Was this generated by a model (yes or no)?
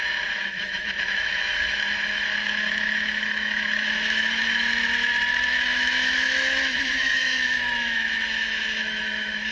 yes